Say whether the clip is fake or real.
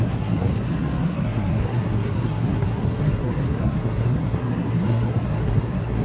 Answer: fake